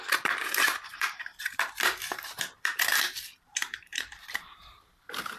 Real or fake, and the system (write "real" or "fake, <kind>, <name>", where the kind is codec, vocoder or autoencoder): fake, vocoder, BigVGAN v2